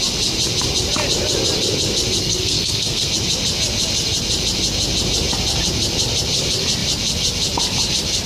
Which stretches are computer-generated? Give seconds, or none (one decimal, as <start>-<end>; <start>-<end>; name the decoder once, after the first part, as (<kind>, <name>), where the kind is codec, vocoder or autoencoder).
2.2-3.1 (codec, SNAC)